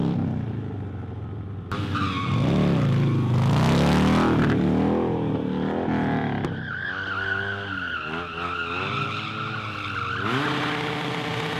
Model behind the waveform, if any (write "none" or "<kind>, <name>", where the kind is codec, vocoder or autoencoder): none